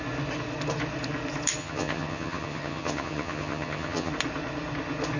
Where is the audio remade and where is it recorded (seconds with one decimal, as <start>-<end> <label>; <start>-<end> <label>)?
0.0-1.6 recorded; 1.6-4.1 remade; 4.1-5.2 recorded